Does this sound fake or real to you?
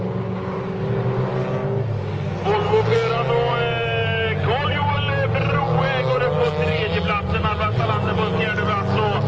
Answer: real